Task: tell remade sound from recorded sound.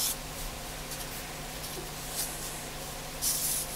remade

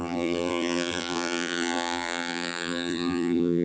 remade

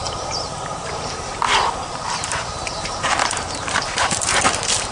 remade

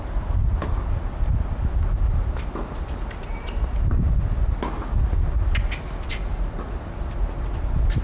recorded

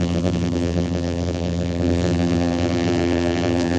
remade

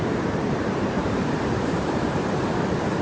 remade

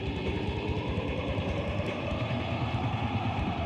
remade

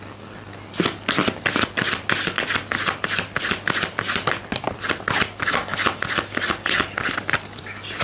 recorded